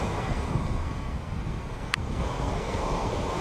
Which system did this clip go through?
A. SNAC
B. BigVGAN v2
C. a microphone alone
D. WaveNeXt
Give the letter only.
A